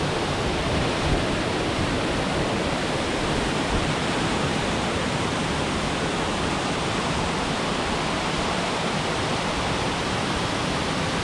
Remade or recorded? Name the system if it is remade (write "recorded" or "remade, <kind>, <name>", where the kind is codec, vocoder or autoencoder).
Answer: remade, vocoder, BigVGAN v2